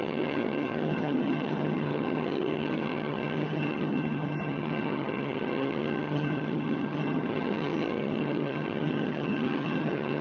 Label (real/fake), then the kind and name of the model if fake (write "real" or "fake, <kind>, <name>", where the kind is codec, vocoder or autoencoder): fake, vocoder, HiFi-GAN